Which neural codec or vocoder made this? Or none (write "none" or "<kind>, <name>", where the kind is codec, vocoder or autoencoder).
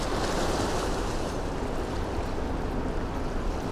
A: none